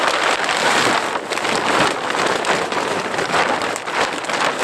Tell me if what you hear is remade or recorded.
recorded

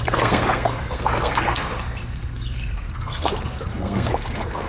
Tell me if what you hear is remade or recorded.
remade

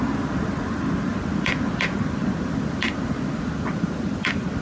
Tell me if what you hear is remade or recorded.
recorded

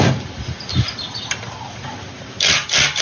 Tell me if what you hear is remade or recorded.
recorded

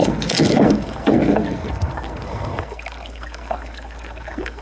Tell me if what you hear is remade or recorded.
remade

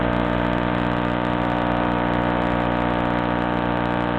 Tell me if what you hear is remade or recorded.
recorded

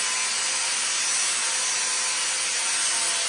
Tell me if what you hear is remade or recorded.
recorded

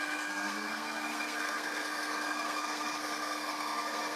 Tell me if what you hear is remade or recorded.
remade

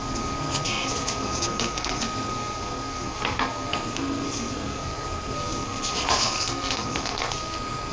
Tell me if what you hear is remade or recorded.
remade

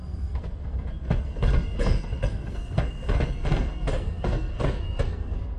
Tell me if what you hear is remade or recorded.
remade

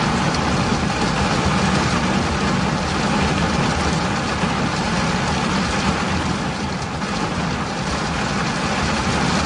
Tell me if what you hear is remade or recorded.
recorded